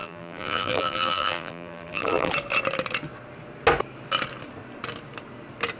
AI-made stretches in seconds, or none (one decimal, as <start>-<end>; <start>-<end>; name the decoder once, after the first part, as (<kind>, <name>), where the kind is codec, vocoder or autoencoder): 0.0-2.3 (vocoder, BigVGAN v2)